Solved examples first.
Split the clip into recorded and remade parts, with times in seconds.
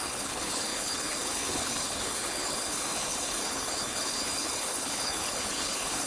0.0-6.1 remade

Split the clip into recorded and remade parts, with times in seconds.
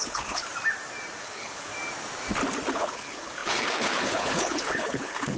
0.0-0.4 remade; 0.4-1.2 recorded; 1.2-1.7 remade; 1.7-2.7 recorded; 2.7-5.4 remade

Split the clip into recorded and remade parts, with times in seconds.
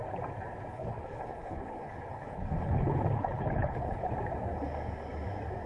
0.0-0.7 recorded; 0.7-4.1 remade; 4.1-5.7 recorded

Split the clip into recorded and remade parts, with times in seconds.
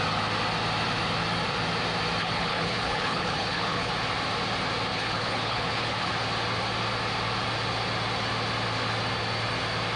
0.0-2.2 recorded; 2.2-3.9 remade; 3.9-4.9 recorded; 4.9-6.1 remade; 6.1-10.0 recorded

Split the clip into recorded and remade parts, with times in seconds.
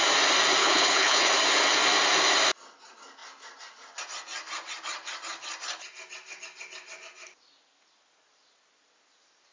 0.0-0.6 recorded; 0.6-1.3 remade; 1.3-9.5 recorded